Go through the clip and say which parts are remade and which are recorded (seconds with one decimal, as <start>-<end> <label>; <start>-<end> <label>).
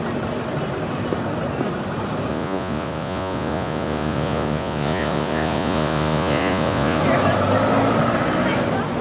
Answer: 0.0-2.3 recorded; 2.3-7.0 remade; 7.0-9.0 recorded